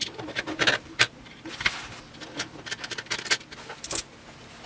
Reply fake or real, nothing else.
real